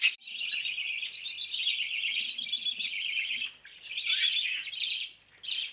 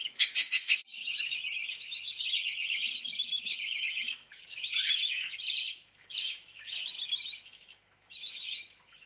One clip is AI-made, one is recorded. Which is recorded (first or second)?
first